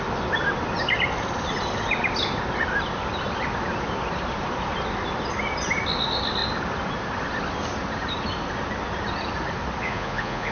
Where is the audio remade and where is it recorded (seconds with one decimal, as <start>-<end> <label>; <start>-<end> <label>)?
0.0-9.8 recorded; 9.8-10.5 remade

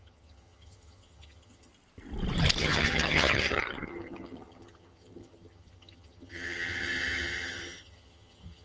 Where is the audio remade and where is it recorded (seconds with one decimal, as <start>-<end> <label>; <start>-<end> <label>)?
0.0-1.7 remade; 1.7-2.6 recorded; 2.6-8.6 remade

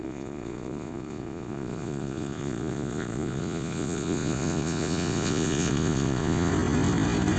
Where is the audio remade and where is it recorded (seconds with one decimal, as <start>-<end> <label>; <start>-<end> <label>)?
0.0-6.5 remade; 6.5-7.4 recorded

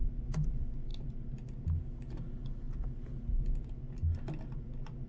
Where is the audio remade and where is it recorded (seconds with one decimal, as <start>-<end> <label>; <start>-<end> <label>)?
0.0-5.1 recorded

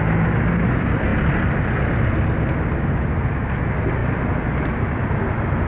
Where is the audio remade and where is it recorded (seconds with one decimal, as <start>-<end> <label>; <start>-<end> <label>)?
0.0-5.7 recorded

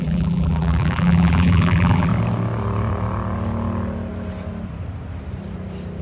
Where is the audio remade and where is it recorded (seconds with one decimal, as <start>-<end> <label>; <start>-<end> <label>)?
0.0-2.1 remade; 2.1-6.0 recorded

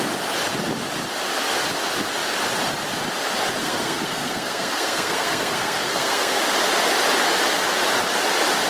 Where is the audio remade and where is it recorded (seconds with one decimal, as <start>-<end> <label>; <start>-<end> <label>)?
0.0-3.6 recorded; 3.6-6.4 remade; 6.4-8.7 recorded

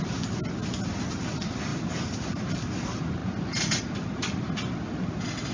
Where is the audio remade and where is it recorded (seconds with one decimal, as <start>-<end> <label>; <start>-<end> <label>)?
0.0-1.7 recorded; 1.7-2.8 remade; 2.8-5.5 recorded